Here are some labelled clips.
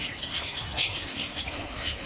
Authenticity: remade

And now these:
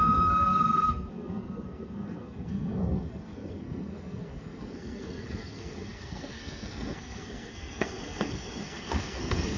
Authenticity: remade